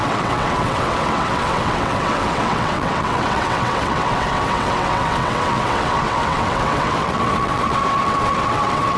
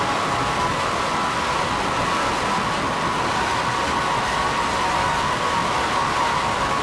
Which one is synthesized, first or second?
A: first